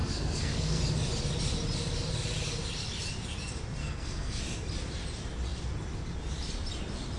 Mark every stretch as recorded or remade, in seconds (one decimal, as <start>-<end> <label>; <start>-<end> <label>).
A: 0.0-0.8 remade; 0.8-3.8 recorded; 3.8-4.4 remade; 4.4-7.2 recorded